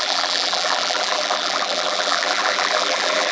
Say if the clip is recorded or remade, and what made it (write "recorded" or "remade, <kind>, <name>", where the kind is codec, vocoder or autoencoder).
remade, vocoder, BigVGAN v2